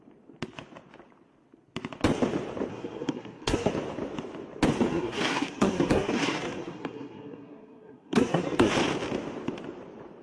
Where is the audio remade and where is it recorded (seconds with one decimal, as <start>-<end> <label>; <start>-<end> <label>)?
0.0-2.7 recorded; 2.7-3.7 remade; 3.7-4.9 recorded; 4.9-8.7 remade; 8.7-10.2 recorded